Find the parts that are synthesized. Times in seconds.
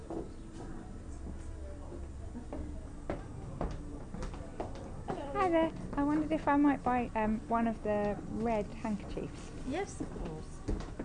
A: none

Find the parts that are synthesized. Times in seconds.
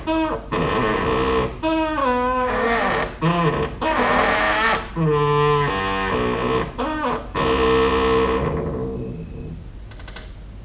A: 2.0-2.8 (codec, DAC)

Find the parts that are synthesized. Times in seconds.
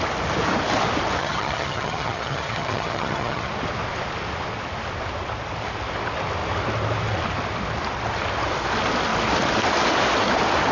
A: 1.2-3.5 (vocoder, HiFi-GAN)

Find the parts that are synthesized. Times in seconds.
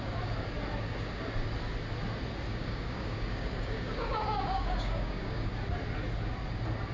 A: 2.6-5.5 (codec, DAC)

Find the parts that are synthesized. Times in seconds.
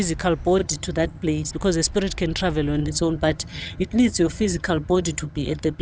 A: 0.6-1.5 (vocoder, HiFi-GAN); 2.8-5.8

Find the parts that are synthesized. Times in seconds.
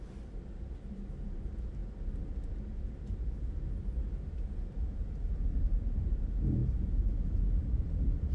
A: 0.0-1.8 (vocoder, BigVGAN v2); 5.6-6.6; 7.8-8.3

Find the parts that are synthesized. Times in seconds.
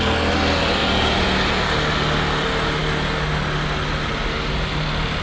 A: 0.8-1.6 (vocoder, Vocos)